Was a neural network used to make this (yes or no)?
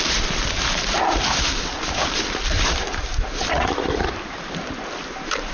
yes